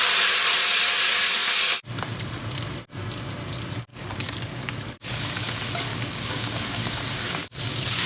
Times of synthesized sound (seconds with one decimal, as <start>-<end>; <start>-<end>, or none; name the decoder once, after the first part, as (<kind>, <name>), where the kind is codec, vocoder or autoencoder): 3.9-5.5 (codec, DAC); 5.9-8.1